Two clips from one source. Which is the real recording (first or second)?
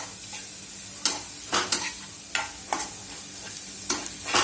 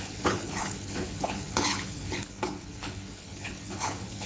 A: first